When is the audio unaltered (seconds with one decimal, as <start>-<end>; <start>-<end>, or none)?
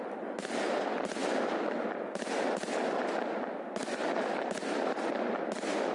0.0-5.9